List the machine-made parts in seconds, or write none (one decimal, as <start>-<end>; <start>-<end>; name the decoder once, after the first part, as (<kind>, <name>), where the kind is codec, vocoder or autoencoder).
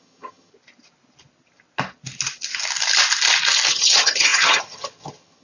0.0-0.5 (vocoder, HiFi-GAN); 3.7-5.4